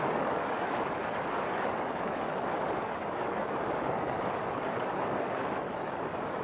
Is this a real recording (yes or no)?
no